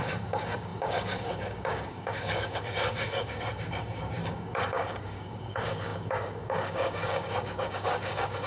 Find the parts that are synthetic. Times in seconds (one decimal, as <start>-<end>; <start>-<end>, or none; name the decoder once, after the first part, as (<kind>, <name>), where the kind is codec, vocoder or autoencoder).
0.0-8.5 (codec, DAC)